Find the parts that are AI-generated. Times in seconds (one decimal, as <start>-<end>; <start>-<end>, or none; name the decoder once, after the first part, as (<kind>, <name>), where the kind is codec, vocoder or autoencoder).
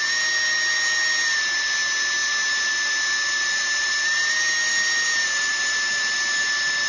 none